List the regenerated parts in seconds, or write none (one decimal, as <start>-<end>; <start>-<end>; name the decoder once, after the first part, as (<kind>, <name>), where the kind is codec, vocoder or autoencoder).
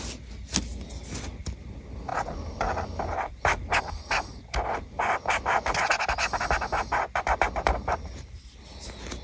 none